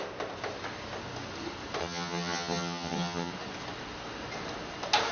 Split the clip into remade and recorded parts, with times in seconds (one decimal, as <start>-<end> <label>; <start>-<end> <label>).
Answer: 0.0-1.8 recorded; 1.8-3.3 remade; 3.3-5.1 recorded